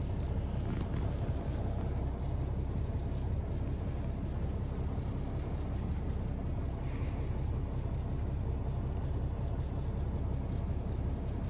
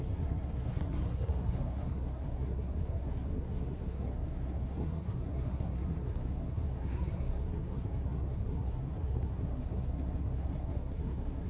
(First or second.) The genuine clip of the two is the first